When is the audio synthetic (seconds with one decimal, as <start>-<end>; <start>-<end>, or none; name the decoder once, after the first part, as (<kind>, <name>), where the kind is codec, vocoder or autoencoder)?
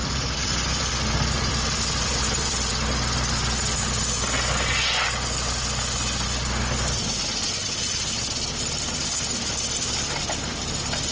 0.0-2.7 (vocoder, BigVGAN v2)